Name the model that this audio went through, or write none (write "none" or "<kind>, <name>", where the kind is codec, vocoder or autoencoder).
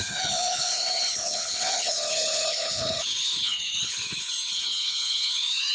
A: codec, HILCodec